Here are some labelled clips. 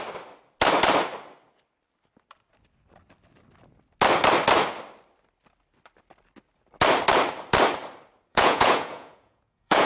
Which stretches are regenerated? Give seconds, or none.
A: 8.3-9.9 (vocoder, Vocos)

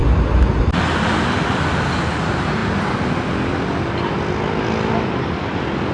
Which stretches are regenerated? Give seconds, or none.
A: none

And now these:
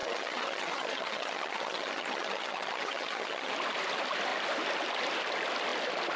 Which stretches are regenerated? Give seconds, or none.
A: 0.0-3.5 (vocoder, HiFi-GAN)

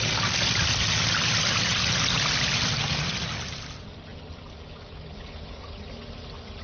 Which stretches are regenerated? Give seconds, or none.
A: none

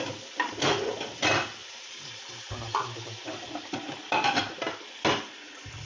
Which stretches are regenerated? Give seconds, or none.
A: 1.6-3.9 (vocoder, BigVGAN v2)

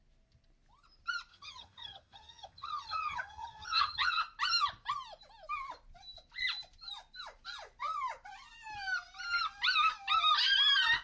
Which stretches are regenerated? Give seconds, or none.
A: 1.3-4.2 (vocoder, HiFi-GAN)